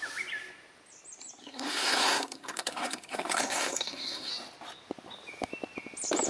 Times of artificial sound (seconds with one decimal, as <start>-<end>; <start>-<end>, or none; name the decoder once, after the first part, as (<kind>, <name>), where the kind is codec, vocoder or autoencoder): 1.4-4.3 (codec, SNAC)

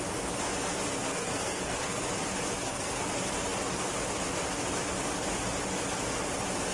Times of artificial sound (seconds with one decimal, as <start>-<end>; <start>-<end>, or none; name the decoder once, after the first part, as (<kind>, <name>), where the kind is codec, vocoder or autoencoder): 1.1-2.0 (codec, SNAC); 2.6-3.1

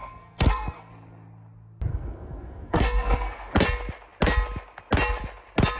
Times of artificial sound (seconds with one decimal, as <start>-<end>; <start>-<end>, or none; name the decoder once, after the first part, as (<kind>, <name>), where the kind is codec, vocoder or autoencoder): 0.0-0.9 (codec, SNAC); 1.9-3.5

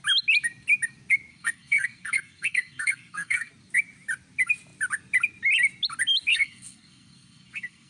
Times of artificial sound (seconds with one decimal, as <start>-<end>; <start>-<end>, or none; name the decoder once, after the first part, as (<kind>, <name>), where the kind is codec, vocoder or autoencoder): 1.3-3.5 (codec, SNAC); 6.3-7.9

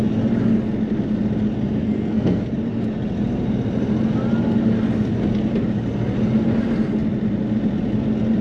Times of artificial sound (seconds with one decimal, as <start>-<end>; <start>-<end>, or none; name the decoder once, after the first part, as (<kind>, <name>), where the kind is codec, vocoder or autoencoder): 1.8-2.5 (codec, SNAC)

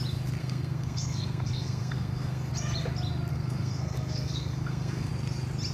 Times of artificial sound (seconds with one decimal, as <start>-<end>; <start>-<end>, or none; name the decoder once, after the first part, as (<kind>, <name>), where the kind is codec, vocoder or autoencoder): 0.4-2.5 (codec, SNAC); 3.3-5.1

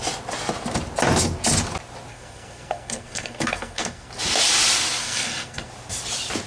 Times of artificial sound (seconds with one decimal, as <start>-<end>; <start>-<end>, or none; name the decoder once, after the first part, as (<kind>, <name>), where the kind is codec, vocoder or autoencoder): 2.1-4.1 (codec, SNAC); 5.0-5.7

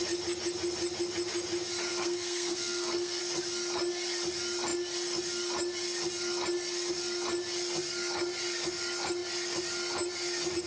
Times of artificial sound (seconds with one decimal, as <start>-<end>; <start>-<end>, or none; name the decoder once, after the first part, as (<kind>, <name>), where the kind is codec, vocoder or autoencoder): 1.9-3.2 (codec, SNAC)